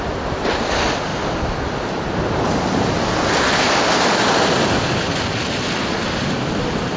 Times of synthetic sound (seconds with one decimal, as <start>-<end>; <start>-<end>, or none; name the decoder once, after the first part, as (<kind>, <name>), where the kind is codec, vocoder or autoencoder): none